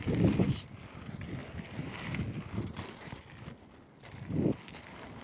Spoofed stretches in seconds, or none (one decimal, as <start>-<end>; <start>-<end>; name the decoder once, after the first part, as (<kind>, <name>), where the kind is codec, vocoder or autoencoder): none